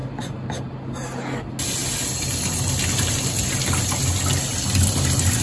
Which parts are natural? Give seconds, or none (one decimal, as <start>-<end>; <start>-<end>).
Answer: 0.6-5.4